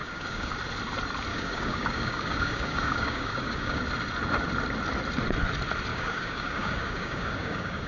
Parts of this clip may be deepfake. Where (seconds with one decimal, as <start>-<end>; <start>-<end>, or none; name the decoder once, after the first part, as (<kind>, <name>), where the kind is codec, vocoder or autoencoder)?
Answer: 0.0-0.5 (codec, DAC); 1.3-3.8; 5.9-7.9